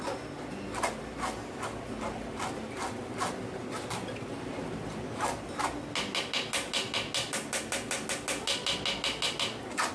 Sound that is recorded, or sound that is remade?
recorded